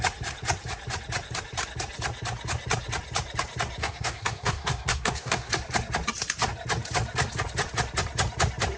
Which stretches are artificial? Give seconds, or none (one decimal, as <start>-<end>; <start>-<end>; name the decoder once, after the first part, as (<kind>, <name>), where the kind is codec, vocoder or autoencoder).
3.8-5.5 (codec, SNAC)